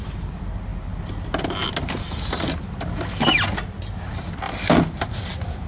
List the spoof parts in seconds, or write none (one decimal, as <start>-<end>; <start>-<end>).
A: none